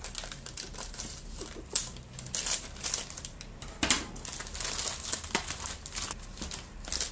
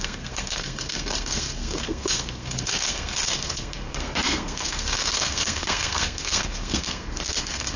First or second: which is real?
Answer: first